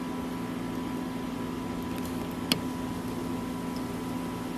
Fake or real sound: real